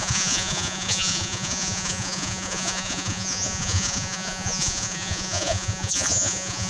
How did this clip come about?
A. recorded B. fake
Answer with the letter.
B